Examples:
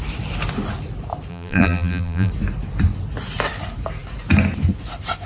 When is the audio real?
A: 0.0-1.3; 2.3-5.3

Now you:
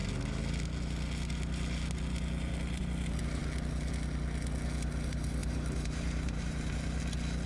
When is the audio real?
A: 0.0-5.4; 7.0-7.5

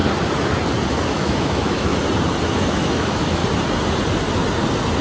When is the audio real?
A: 0.0-1.1; 1.9-2.5; 3.4-5.0